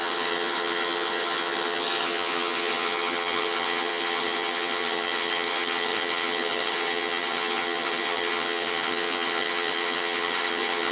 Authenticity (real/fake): fake